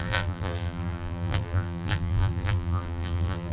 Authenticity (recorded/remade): remade